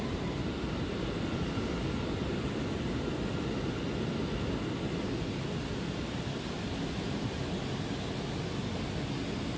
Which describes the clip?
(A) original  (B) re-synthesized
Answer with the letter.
A